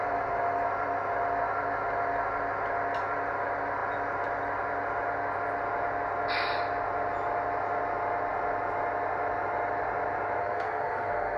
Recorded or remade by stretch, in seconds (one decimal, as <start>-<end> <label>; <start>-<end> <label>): 0.0-10.4 recorded; 10.4-11.4 remade